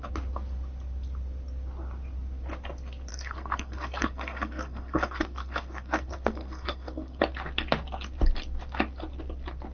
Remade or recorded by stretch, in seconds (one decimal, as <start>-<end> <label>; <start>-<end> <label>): 0.0-3.1 recorded; 3.1-7.2 remade; 7.2-9.7 recorded